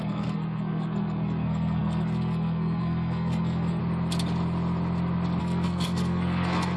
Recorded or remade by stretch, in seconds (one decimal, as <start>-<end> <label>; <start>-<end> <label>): 0.0-3.8 remade; 3.8-5.4 recorded; 5.4-6.8 remade